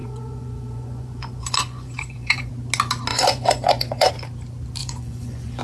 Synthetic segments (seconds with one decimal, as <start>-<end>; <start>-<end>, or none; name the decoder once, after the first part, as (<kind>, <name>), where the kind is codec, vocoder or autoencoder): 0.0-2.5 (vocoder, Vocos); 3.1-4.1; 4.8-5.6